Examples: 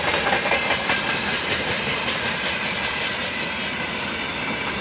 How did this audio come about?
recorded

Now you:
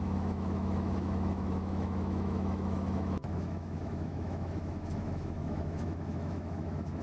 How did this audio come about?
remade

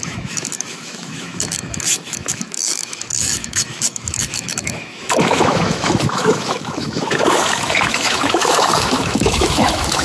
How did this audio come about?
remade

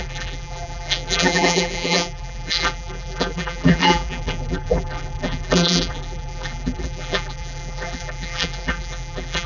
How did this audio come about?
remade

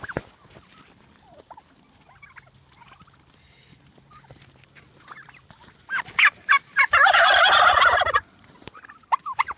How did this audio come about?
remade